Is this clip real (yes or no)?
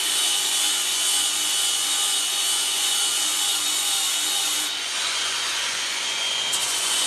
no